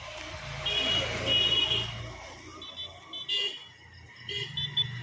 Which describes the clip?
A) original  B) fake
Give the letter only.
A